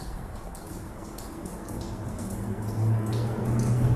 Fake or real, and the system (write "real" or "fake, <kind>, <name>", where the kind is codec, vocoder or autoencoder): fake, codec, SNAC